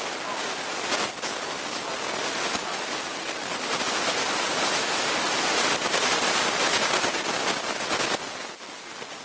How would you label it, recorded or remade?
recorded